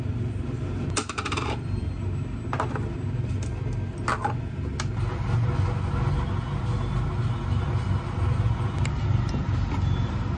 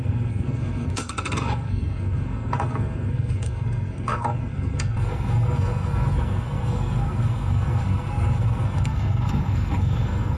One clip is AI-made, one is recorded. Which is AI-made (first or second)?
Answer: second